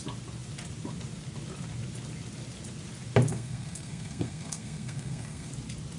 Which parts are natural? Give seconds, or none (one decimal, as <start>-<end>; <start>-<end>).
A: 0.0-3.3; 5.5-6.0